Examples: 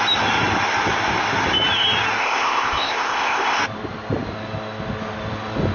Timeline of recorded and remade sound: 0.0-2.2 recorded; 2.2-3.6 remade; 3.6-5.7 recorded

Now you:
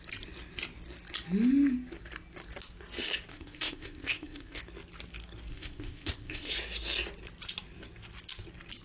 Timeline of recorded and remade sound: 0.0-3.3 recorded; 3.3-4.6 remade; 4.6-5.5 recorded; 5.5-6.5 remade; 6.5-8.8 recorded

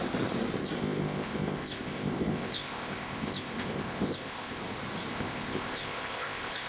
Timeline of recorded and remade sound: 0.0-0.6 recorded; 0.6-4.6 remade; 4.6-5.1 recorded; 5.1-6.7 remade